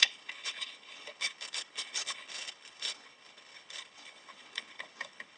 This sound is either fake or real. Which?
fake